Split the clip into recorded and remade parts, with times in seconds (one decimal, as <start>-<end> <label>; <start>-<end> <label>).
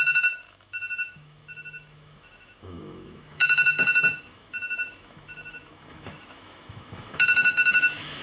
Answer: 0.0-8.2 remade